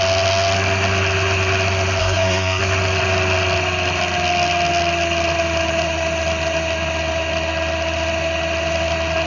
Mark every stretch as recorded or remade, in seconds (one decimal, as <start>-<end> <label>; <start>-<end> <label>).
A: 0.0-2.0 recorded; 2.0-2.6 remade; 2.6-9.3 recorded